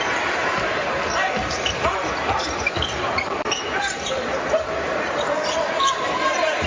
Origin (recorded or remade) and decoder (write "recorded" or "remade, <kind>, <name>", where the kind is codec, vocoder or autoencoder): remade, vocoder, BigVGAN v2